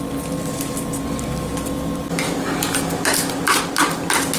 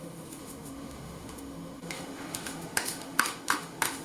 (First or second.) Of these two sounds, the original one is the first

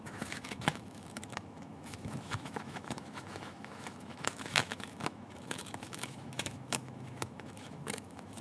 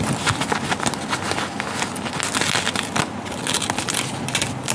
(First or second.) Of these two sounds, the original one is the second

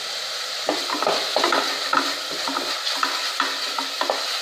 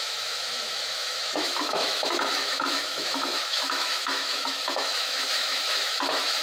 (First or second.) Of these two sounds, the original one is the first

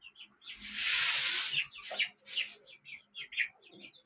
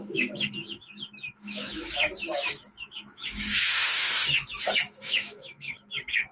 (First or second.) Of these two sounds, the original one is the first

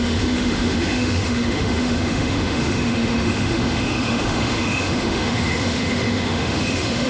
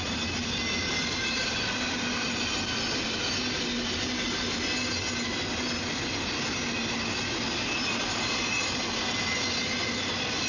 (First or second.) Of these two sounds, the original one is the second